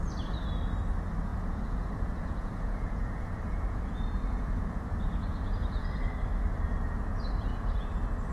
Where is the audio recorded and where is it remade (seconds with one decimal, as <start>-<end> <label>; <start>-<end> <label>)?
0.0-1.3 recorded; 1.3-5.8 remade; 5.8-7.5 recorded; 7.5-8.3 remade